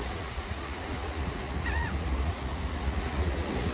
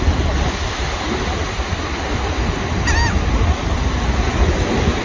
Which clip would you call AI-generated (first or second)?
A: first